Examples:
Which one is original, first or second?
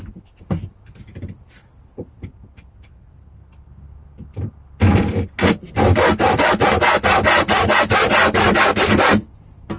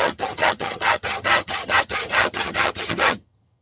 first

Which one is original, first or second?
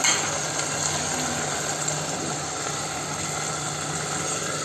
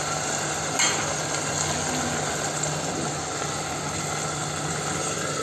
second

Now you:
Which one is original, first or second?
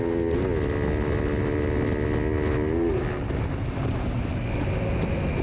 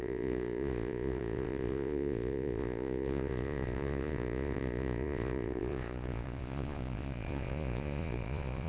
first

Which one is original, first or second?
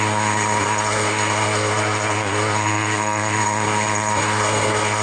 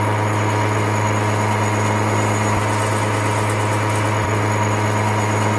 second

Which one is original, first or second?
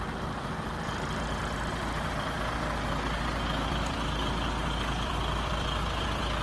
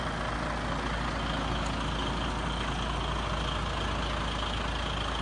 second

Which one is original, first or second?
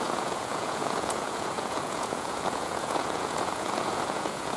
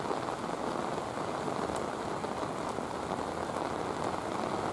second